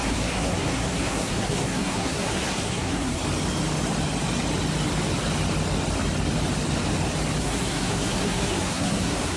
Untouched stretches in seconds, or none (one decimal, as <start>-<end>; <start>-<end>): 3.2-7.4